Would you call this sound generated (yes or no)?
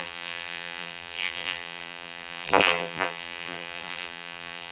yes